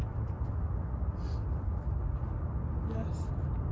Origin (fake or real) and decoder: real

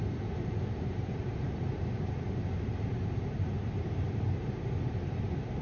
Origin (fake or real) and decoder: fake, vocoder, BigVGAN v2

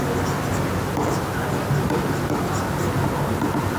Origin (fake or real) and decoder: real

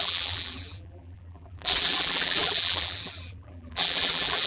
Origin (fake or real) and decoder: fake, vocoder, BigVGAN v2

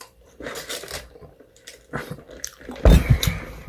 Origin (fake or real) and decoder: fake, vocoder, BigVGAN v2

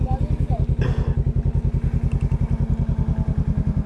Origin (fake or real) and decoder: real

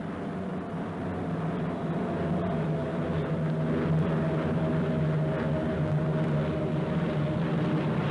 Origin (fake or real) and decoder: real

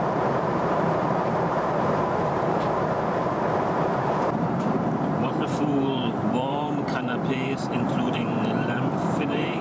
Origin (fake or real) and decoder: fake, vocoder, BigVGAN v2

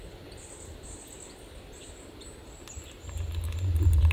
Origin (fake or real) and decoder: real